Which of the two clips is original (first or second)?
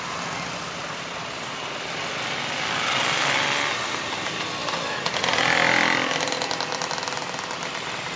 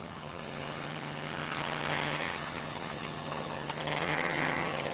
first